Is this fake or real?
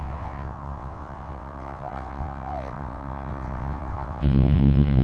fake